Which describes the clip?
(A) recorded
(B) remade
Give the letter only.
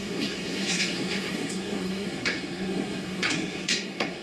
B